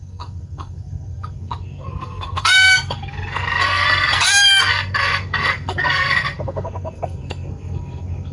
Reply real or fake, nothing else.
fake